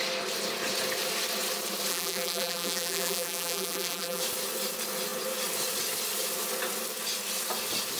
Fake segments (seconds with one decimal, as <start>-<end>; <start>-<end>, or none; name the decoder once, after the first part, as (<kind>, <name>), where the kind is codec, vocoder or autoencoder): 1.9-4.2 (vocoder, BigVGAN v2)